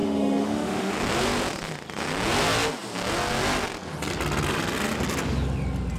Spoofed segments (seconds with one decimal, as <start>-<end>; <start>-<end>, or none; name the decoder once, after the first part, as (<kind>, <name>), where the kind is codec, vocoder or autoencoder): 0.0-0.9 (autoencoder, DAC-VAE)